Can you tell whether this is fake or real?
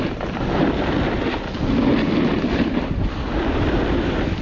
real